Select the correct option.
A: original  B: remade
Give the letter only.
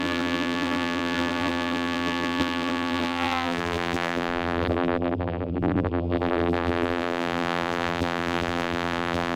B